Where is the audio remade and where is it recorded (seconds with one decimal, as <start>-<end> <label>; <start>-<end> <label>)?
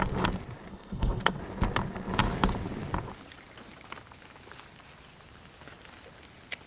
0.0-0.7 recorded; 0.7-1.4 remade; 1.4-6.7 recorded